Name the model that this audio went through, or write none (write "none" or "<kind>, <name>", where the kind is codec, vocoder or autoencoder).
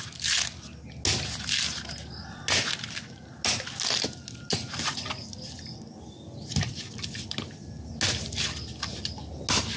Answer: none